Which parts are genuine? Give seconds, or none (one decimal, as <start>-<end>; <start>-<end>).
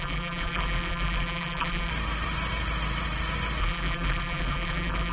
1.9-3.6